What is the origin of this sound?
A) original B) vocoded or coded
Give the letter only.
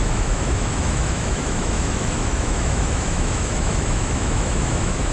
B